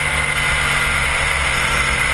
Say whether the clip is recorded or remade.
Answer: recorded